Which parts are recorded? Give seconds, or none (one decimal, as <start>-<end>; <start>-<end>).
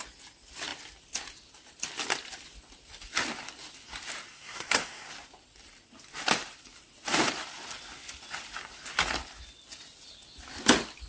0.0-4.3; 5.1-11.1